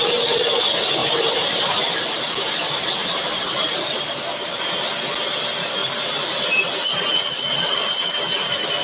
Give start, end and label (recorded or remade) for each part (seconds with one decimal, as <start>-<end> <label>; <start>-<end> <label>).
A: 0.0-1.0 recorded; 1.0-2.3 remade; 2.3-3.0 recorded; 3.0-4.5 remade; 4.5-8.8 recorded